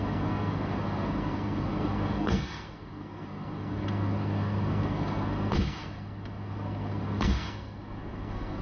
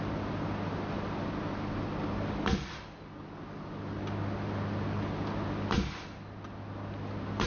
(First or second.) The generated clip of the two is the first